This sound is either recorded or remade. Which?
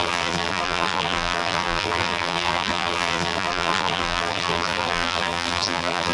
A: remade